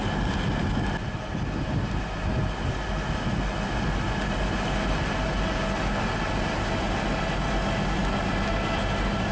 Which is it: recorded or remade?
recorded